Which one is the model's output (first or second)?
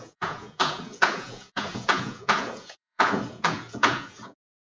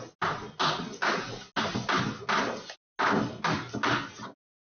first